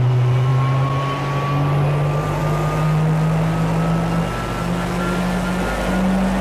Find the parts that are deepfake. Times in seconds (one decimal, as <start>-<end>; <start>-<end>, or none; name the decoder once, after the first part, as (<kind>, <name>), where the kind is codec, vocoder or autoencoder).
none